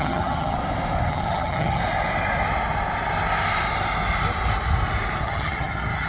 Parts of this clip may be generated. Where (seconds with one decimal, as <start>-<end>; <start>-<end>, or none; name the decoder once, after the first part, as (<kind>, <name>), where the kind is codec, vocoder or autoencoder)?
0.0-0.6 (vocoder, HiFi-GAN); 1.1-1.8; 5.2-6.1